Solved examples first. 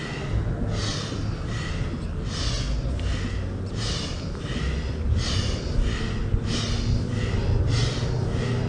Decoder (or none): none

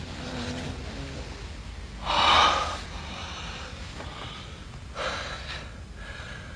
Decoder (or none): none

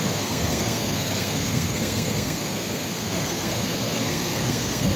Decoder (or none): codec, SNAC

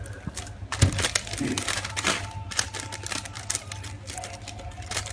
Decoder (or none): none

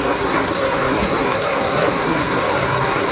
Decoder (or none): codec, SNAC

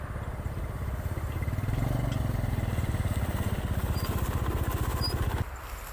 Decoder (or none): none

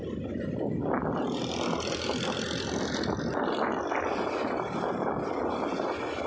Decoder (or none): none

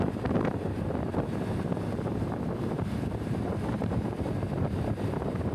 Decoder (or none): vocoder, BigVGAN v2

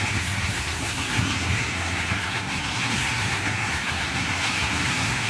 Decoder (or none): codec, SNAC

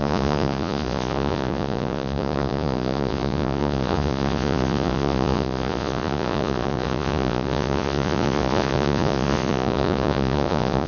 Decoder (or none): vocoder, Vocos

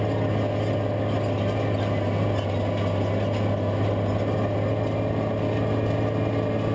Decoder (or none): none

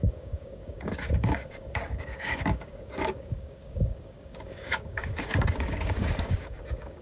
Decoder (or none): codec, DAC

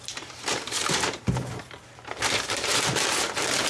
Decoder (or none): vocoder, BigVGAN v2